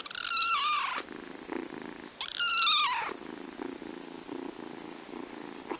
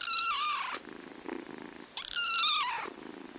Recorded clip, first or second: first